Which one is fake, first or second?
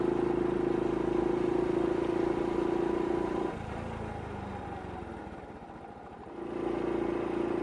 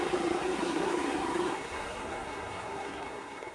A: second